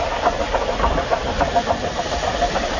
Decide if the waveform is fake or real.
real